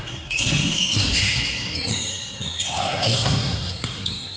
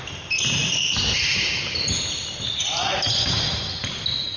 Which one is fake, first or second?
first